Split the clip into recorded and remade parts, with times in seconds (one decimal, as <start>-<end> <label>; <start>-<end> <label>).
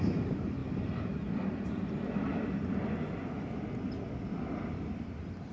0.0-0.6 remade; 0.6-1.4 recorded; 1.4-2.3 remade; 2.3-5.5 recorded